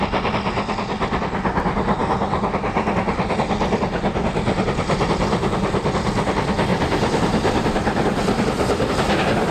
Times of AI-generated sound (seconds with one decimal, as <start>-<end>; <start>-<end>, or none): 6.7-8.9